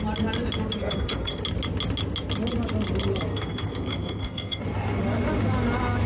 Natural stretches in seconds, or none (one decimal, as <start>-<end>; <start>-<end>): 0.0-0.8; 1.4-3.3; 4.6-6.1